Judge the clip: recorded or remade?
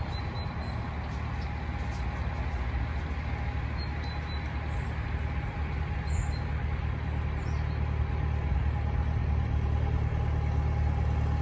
recorded